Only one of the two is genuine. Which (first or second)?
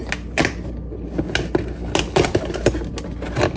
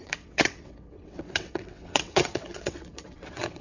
first